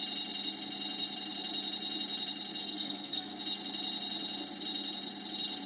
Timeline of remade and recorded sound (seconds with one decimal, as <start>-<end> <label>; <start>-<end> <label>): 0.0-2.6 recorded; 2.6-3.4 remade; 3.4-5.7 recorded